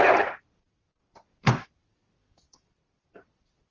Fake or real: fake